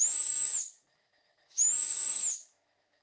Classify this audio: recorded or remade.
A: remade